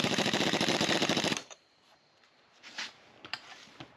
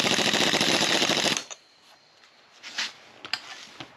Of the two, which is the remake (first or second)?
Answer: first